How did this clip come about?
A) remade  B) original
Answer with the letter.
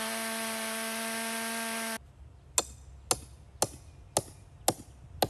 B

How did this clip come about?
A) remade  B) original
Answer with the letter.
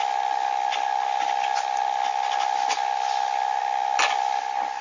B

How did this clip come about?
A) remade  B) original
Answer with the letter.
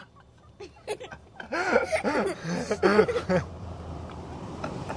A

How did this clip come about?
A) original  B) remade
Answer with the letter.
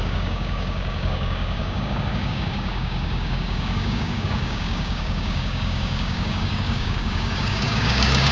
B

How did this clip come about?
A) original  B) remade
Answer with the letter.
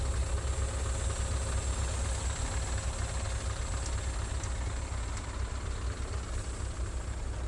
A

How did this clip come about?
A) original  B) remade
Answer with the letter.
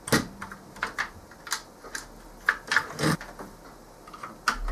A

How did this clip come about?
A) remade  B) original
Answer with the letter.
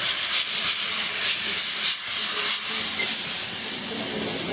B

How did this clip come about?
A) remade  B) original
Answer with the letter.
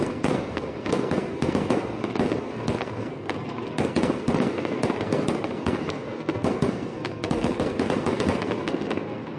A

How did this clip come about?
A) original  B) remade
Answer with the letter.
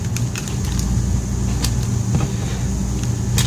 A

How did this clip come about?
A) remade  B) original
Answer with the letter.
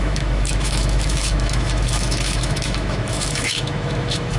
A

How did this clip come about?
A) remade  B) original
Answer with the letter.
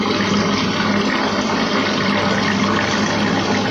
B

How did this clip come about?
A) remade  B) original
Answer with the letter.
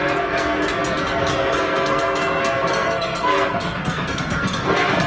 A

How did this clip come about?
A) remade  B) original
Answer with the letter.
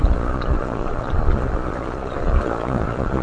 A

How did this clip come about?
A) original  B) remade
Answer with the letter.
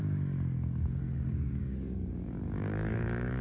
B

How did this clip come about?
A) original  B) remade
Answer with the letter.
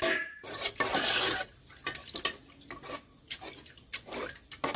A